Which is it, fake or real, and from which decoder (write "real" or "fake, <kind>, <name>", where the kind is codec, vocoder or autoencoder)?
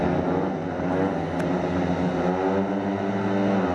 real